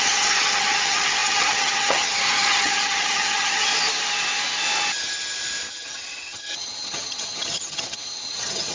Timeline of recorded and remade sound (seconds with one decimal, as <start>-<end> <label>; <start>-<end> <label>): 0.0-3.7 remade; 3.7-5.7 recorded; 5.7-8.7 remade